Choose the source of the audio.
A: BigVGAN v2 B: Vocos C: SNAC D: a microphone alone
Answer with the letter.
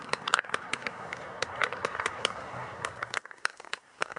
C